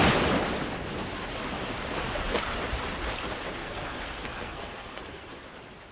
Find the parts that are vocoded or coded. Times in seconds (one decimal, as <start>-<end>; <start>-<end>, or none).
3.6-5.3